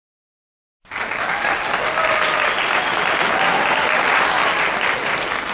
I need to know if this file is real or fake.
real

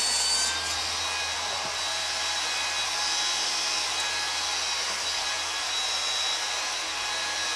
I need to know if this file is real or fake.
real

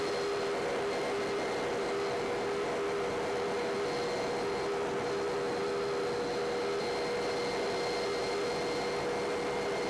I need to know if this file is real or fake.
real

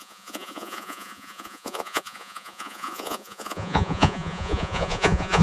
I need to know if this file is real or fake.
fake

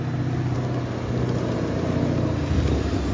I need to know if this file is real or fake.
real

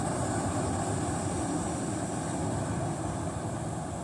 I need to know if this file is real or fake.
real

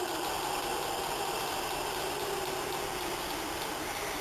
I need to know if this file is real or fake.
real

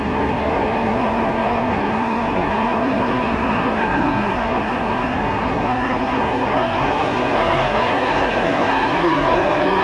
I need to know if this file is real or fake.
fake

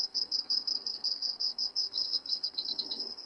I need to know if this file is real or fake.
fake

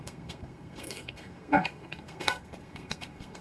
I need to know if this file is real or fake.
fake